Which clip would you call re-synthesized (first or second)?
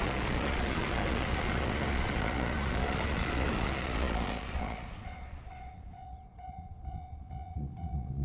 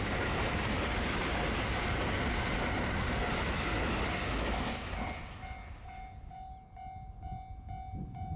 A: first